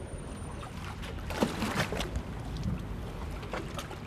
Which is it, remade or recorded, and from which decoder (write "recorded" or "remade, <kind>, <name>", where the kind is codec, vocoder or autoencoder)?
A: recorded